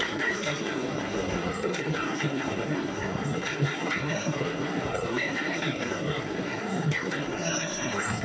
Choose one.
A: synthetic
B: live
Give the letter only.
A